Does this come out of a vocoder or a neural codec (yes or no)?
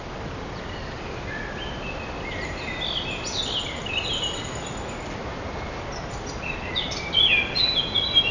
no